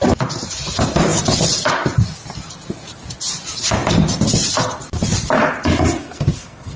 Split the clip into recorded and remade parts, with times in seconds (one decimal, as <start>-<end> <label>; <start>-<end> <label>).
0.0-6.0 recorded; 6.0-6.8 remade